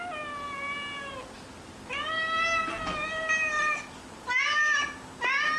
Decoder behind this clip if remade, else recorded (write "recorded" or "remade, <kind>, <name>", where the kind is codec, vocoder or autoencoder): recorded